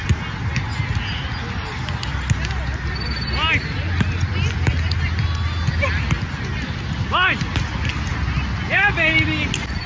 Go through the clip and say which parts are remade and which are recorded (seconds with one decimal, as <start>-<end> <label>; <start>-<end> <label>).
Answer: 0.0-9.9 recorded